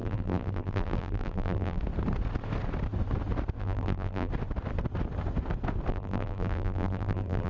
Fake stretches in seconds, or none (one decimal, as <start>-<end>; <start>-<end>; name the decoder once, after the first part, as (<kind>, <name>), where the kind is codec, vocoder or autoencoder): 0.0-1.8 (vocoder, BigVGAN v2); 3.6-4.3; 5.9-7.5